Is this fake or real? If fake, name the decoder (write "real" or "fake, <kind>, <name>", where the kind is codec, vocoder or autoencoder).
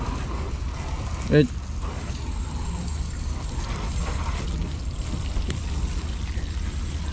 real